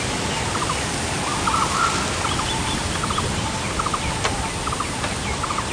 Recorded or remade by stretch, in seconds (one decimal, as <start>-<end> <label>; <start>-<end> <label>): 0.0-5.7 recorded